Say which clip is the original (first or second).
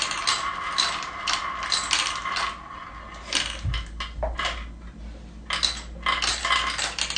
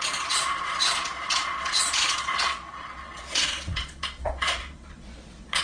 first